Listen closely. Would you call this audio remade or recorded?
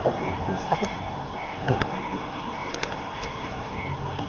remade